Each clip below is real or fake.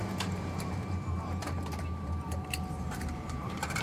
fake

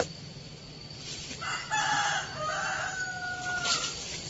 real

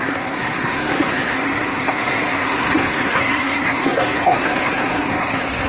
fake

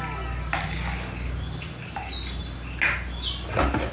real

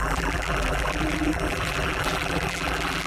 fake